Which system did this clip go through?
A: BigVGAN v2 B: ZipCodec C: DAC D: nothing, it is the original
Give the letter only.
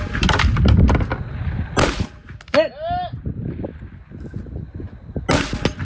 D